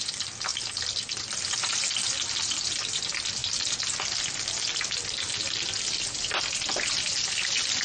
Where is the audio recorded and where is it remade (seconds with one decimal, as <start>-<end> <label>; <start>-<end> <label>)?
0.0-7.8 recorded